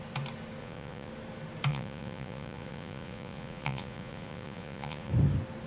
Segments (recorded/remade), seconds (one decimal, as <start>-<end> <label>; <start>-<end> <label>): 0.0-0.6 recorded; 0.6-1.1 remade; 1.1-1.7 recorded; 1.7-5.1 remade; 5.1-5.7 recorded